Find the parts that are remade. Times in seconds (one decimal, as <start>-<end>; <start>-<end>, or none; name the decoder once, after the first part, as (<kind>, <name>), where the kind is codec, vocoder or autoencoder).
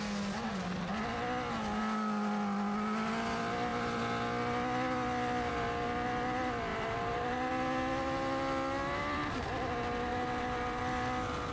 6.7-7.5 (vocoder, BigVGAN v2); 10.1-10.8